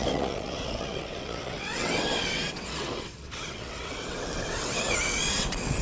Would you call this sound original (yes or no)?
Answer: no